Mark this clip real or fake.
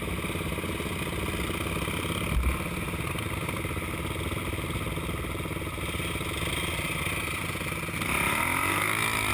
real